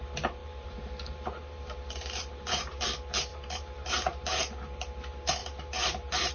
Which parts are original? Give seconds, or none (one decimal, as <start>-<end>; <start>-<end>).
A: 0.0-0.4; 2.8-3.3; 4.6-5.4